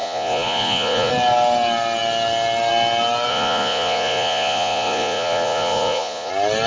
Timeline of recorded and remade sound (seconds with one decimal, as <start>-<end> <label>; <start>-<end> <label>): 0.0-1.1 remade; 1.1-3.3 recorded; 3.3-6.3 remade; 6.3-6.7 recorded